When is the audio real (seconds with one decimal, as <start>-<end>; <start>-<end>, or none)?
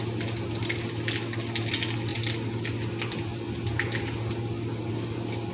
0.0-5.5